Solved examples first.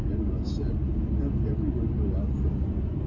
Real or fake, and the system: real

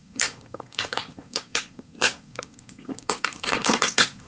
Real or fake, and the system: fake, codec, SNAC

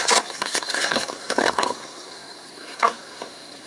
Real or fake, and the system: fake, codec, SNAC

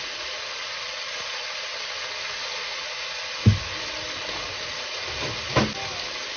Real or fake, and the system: real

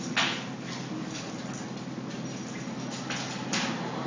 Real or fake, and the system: real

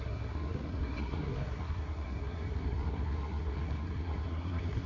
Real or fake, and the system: fake, codec, SNAC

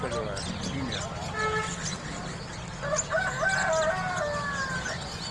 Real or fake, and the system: real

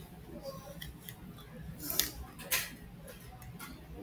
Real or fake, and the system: real